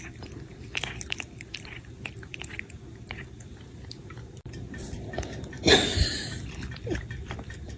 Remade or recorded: recorded